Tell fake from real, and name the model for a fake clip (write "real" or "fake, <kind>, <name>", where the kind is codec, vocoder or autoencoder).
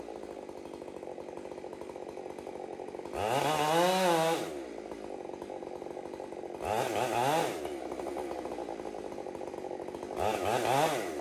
real